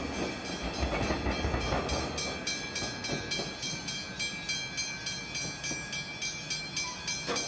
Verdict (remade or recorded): recorded